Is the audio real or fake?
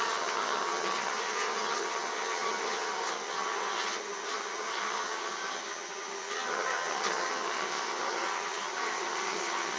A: fake